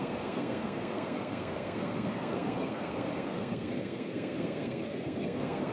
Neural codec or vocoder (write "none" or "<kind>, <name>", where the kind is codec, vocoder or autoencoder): codec, SNAC